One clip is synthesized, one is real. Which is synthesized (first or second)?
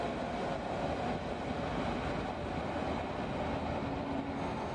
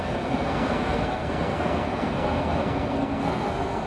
second